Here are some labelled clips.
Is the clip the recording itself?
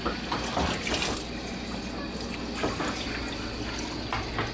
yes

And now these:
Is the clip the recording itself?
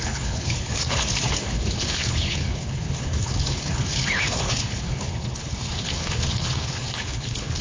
no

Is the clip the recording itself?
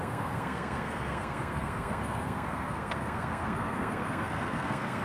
no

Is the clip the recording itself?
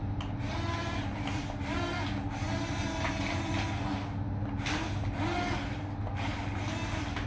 yes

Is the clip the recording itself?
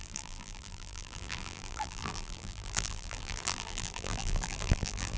no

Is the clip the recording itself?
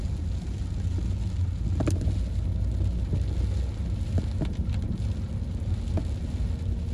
yes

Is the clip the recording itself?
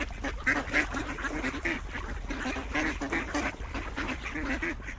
yes